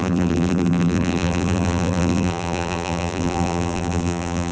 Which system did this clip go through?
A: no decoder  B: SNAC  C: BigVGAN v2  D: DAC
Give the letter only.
C